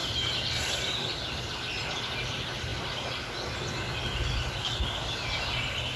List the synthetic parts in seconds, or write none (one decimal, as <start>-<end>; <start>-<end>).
0.0-0.7